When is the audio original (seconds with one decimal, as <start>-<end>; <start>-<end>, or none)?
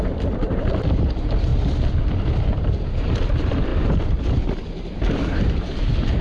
1.5-2.5